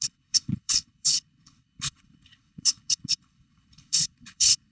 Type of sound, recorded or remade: remade